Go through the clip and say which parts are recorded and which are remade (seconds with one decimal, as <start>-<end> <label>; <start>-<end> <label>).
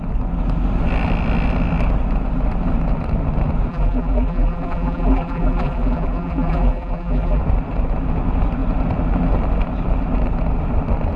0.0-3.7 recorded; 3.7-7.4 remade; 7.4-11.2 recorded